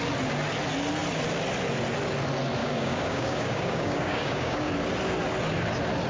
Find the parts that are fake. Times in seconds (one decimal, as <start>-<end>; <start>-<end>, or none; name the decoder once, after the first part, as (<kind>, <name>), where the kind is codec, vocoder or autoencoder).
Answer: 2.6-4.7 (codec, DAC)